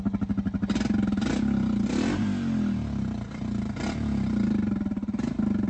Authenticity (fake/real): real